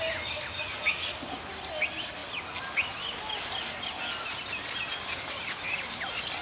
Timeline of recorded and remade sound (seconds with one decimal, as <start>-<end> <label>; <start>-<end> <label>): 0.0-6.4 recorded